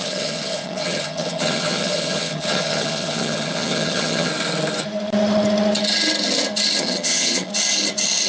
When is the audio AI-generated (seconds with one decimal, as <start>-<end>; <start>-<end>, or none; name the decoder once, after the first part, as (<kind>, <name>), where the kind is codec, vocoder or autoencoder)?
0.0-4.3 (vocoder, HiFi-GAN); 6.8-7.5